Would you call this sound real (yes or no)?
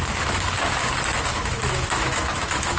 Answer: no